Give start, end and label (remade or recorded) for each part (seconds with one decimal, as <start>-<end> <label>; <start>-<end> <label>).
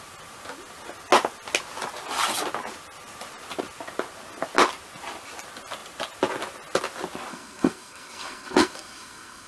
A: 0.0-7.3 recorded; 7.3-9.5 remade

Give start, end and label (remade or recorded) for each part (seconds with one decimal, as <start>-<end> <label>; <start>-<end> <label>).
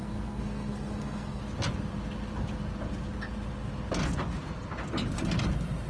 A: 0.0-1.4 remade; 1.4-5.9 recorded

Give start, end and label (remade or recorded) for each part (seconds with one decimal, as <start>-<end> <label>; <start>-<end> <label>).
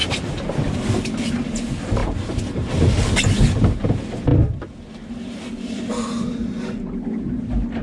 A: 0.0-7.8 recorded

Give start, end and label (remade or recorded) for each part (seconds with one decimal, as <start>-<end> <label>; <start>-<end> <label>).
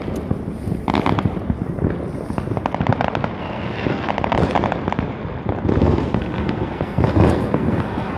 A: 0.0-3.4 recorded; 3.4-4.1 remade; 4.1-5.8 recorded; 5.8-8.2 remade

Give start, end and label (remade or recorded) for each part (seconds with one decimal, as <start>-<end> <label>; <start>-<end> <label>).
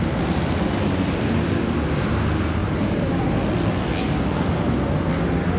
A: 0.0-5.6 recorded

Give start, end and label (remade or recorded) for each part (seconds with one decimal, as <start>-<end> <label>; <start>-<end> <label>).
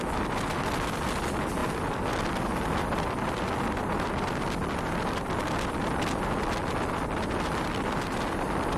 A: 0.0-8.8 recorded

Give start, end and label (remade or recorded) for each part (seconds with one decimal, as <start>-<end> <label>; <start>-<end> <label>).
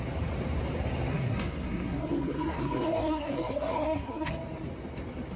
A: 0.0-1.1 recorded; 1.1-4.3 remade; 4.3-5.4 recorded